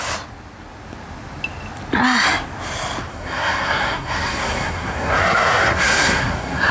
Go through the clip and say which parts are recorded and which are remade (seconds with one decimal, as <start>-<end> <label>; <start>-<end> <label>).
0.0-3.1 recorded; 3.1-6.7 remade